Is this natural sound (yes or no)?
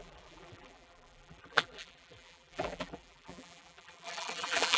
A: no